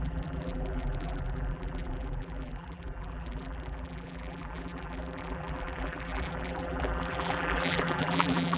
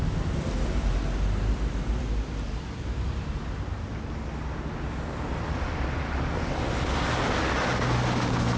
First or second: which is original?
second